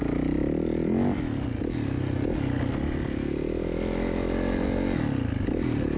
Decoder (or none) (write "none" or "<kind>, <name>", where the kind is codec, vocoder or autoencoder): none